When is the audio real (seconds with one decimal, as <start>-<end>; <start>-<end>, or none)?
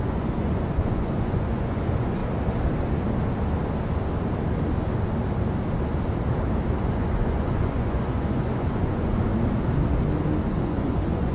2.2-6.8; 9.3-10.5